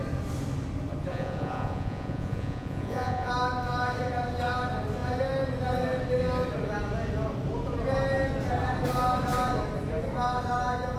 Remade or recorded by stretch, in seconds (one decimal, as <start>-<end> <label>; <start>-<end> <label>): 0.0-1.1 recorded; 1.1-3.3 remade; 3.3-11.0 recorded